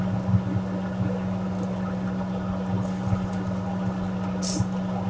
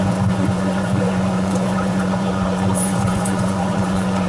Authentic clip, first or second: first